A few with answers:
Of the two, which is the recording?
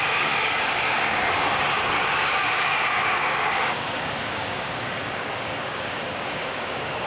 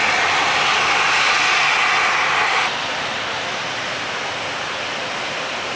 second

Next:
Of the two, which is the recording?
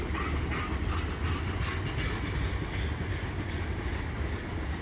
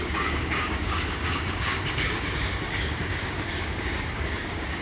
first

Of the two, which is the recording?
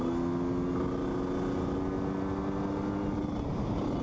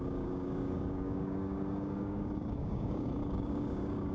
first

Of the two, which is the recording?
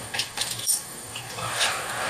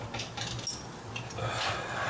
second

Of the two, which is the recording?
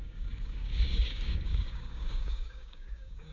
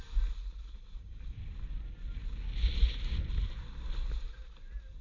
second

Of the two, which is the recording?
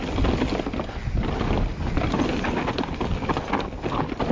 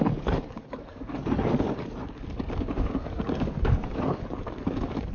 first